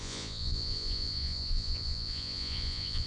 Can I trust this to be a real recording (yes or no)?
no